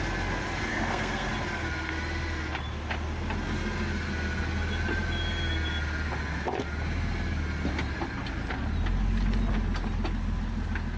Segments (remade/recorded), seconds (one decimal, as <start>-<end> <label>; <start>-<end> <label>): 0.0-0.7 recorded; 0.7-1.3 remade; 1.3-11.0 recorded